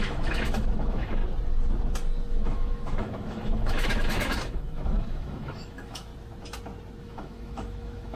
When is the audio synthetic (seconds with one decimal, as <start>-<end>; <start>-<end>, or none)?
0.0-1.2; 2.3-6.1; 7.0-8.2

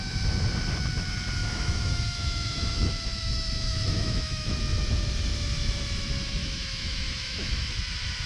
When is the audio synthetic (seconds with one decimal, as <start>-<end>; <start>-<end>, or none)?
1.4-4.6; 6.4-7.7

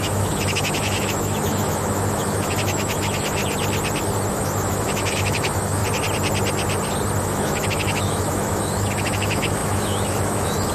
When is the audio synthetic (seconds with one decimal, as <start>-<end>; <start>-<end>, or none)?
0.0-3.4; 4.3-5.8; 7.2-10.7

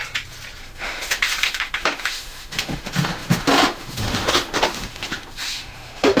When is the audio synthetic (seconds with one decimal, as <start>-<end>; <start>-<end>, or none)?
0.6-6.2

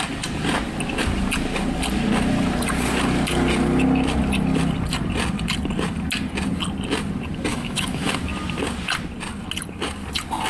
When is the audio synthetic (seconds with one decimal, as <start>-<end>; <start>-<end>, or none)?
7.5-8.1